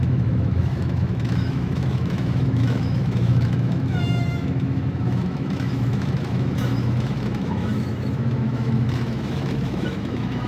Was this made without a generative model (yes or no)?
no